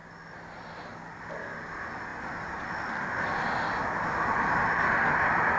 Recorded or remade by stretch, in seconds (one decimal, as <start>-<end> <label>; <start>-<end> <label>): 0.0-5.6 recorded